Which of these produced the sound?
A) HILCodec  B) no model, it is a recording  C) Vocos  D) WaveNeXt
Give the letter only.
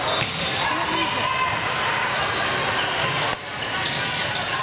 B